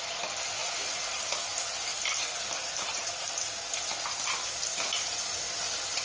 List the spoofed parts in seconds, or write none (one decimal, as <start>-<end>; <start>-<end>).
0.6-1.2; 1.9-3.3

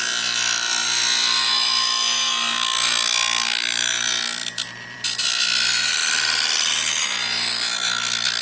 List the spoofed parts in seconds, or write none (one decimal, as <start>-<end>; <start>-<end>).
4.4-5.4; 6.0-7.0

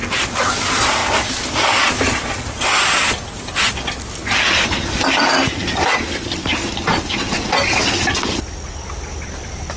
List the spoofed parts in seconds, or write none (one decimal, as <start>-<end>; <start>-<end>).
0.0-1.0; 2.6-3.2; 4.8-6.5; 8.7-9.8

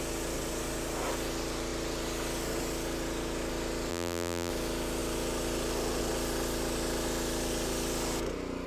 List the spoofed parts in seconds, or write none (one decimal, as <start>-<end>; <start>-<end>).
3.9-4.5

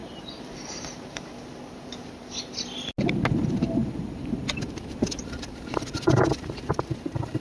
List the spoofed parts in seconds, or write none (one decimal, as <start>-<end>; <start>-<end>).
0.0-2.2; 3.3-7.4

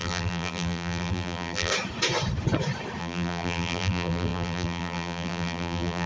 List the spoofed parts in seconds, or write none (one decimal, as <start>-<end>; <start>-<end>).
0.0-1.7; 3.0-6.1